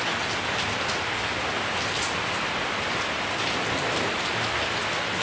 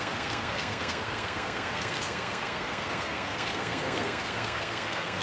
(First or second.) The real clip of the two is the first